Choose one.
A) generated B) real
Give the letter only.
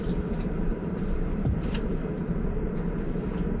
A